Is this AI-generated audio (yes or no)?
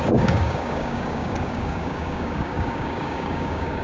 yes